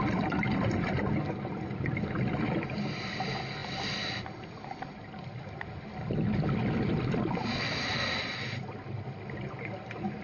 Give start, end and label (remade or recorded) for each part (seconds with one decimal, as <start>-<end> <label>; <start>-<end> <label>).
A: 0.0-10.2 recorded